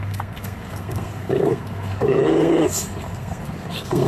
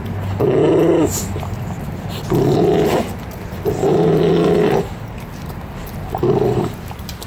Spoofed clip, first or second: first